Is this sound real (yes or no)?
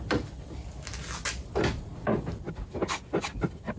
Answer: yes